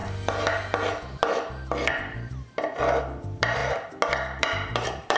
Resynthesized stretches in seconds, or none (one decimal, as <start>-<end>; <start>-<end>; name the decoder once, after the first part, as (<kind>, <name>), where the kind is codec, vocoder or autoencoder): 3.0-3.6 (vocoder, BigVGAN v2); 4.4-5.2